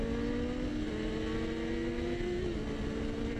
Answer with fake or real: real